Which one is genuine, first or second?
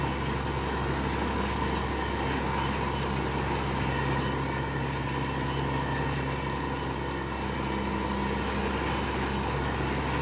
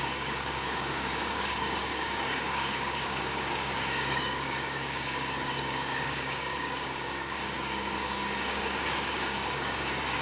first